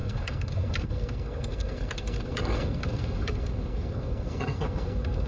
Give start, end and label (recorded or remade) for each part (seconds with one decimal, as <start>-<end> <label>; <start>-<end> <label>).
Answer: 0.0-5.3 remade